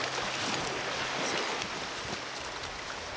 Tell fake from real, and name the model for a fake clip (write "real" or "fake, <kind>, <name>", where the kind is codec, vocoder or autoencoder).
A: real